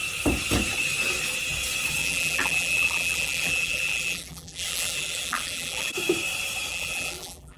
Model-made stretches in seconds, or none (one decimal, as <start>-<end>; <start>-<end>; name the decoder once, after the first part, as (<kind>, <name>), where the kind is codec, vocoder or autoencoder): 2.0-5.9 (vocoder, BigVGAN v2); 6.7-7.6